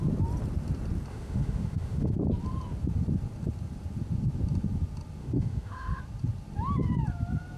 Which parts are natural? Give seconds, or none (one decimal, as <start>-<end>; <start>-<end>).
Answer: 0.0-1.1; 2.1-5.2; 6.0-7.6